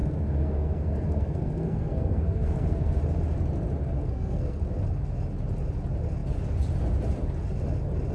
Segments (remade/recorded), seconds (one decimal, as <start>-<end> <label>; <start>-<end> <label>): 0.0-3.0 remade; 3.0-4.0 recorded; 4.0-4.6 remade; 4.6-8.1 recorded